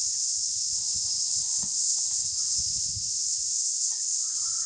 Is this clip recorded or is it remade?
remade